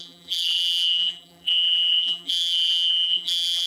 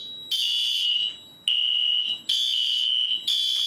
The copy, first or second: first